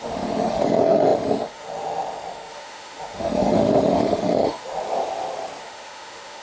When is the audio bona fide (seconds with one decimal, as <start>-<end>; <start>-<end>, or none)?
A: 4.8-5.6